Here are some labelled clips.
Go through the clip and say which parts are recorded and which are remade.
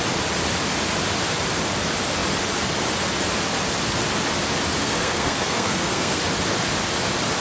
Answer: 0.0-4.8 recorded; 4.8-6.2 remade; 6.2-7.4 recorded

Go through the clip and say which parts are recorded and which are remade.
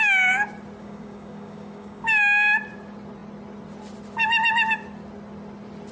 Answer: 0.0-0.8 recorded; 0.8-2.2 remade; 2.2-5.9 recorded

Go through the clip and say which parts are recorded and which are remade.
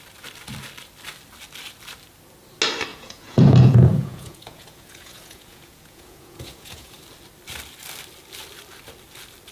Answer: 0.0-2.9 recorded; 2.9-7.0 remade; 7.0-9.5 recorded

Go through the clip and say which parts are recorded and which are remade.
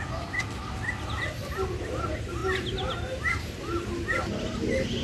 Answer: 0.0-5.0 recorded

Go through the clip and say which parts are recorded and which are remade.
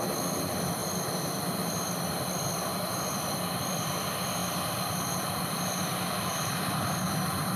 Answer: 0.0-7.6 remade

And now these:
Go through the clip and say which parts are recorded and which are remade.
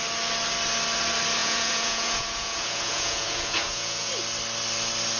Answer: 0.0-1.4 recorded; 1.4-4.1 remade; 4.1-5.2 recorded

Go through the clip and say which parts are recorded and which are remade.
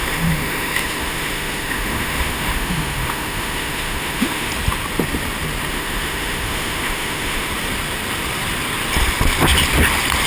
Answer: 0.0-4.5 remade; 4.5-5.7 recorded; 5.7-7.5 remade; 7.5-10.3 recorded